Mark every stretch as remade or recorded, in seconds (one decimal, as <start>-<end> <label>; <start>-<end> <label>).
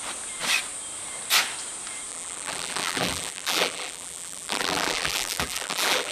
0.0-2.1 recorded; 2.1-6.1 remade